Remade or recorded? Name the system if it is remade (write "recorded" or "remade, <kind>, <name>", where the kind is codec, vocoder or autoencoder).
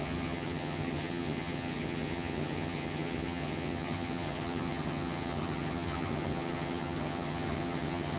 remade, vocoder, HiFi-GAN